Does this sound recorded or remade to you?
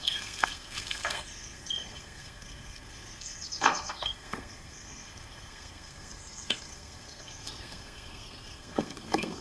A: remade